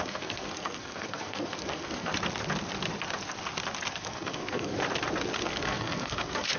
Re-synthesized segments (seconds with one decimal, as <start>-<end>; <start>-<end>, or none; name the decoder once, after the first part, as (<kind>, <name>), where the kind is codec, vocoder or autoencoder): 0.0-2.1 (codec, SNAC); 3.9-4.8; 5.4-6.6